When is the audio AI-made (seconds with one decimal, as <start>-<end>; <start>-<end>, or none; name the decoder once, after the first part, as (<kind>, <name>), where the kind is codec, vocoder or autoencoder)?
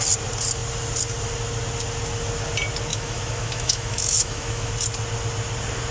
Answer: 2.9-4.7 (autoencoder, DAC-VAE)